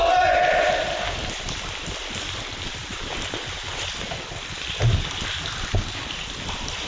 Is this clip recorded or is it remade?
recorded